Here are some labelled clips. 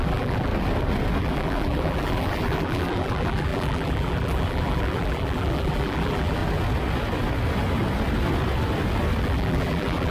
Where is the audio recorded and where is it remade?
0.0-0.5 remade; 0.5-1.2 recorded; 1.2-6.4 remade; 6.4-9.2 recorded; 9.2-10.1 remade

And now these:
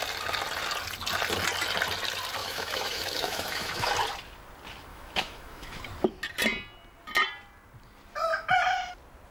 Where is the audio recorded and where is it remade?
0.0-2.4 recorded; 2.4-3.9 remade; 3.9-4.9 recorded; 4.9-5.8 remade; 5.8-9.3 recorded

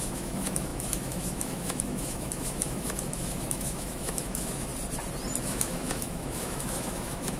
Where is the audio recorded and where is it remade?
0.0-4.7 remade; 4.7-5.4 recorded; 5.4-7.4 remade